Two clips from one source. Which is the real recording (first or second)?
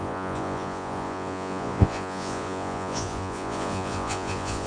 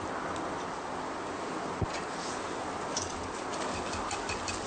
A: second